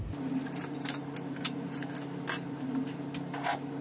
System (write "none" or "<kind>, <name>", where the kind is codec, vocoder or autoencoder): none